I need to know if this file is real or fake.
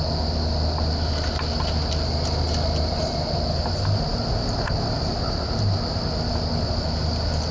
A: real